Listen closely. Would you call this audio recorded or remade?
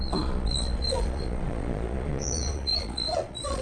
remade